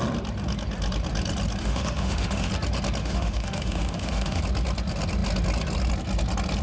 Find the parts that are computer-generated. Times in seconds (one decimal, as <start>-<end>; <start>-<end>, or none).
1.6-2.5; 3.0-4.4